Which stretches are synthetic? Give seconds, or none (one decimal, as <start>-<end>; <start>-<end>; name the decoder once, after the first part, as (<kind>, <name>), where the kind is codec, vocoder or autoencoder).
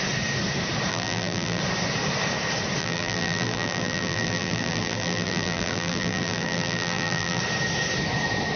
0.9-1.6 (vocoder, BigVGAN v2); 2.8-7.4